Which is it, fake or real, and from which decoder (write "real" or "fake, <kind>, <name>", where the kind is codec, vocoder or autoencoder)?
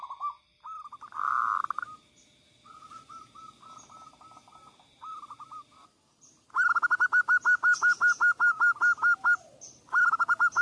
real